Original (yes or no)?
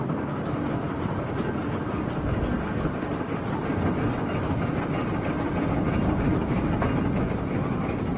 yes